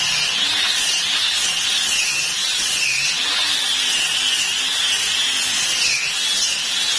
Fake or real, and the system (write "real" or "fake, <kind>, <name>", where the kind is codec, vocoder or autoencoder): real